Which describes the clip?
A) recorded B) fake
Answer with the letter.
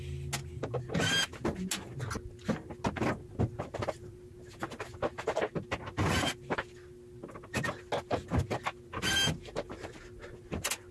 A